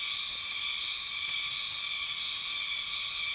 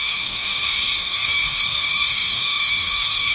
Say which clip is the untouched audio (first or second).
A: first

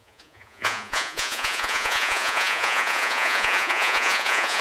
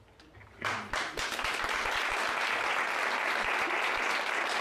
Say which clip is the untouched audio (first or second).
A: second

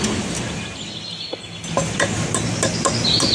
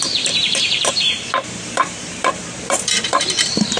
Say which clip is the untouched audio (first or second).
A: first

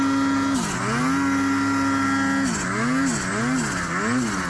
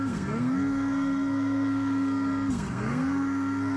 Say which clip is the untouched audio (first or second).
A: first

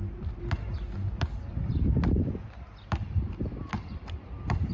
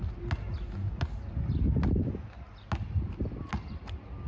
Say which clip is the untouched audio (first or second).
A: second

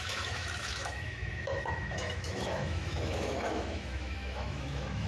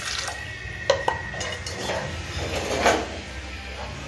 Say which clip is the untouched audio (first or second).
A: second